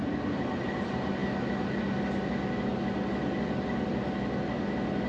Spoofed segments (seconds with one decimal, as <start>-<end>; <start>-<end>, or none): none

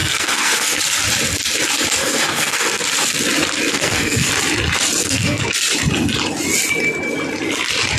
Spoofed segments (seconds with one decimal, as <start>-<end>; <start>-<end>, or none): 0.0-0.8; 2.0-2.8; 3.7-4.3; 5.0-5.5

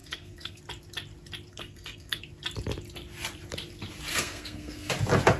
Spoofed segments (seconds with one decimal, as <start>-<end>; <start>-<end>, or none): 0.0-0.6; 1.5-2.2; 4.1-4.9

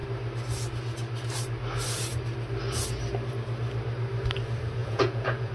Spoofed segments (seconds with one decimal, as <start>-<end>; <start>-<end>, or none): 4.8-5.5

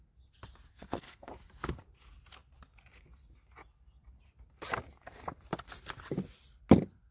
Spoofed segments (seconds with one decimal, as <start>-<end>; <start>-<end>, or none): 0.7-1.3